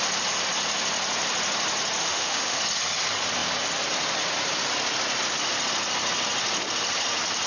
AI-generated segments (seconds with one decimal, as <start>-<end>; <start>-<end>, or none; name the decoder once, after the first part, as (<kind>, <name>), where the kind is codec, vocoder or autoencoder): 2.0-2.6 (autoencoder, DAC-VAE)